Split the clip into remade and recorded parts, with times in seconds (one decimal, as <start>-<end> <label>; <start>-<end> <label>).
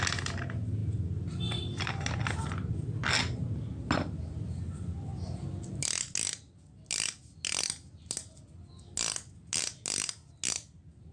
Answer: 0.0-11.1 recorded